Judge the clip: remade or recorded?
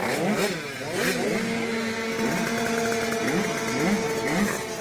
recorded